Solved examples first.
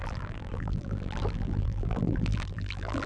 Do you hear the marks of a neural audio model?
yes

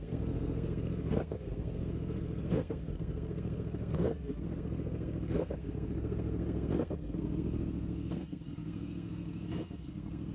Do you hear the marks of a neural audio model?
yes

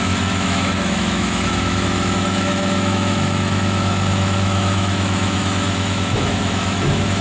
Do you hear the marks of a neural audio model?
yes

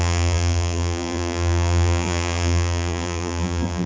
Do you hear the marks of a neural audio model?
yes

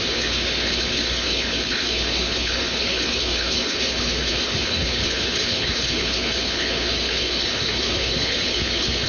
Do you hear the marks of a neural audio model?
yes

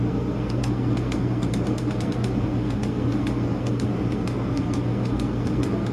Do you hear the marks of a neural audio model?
yes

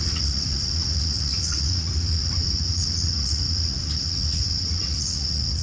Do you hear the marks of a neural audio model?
yes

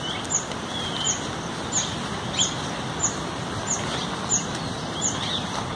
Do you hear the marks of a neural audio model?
no